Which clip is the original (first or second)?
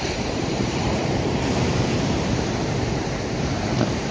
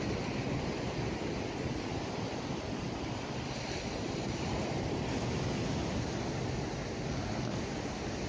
second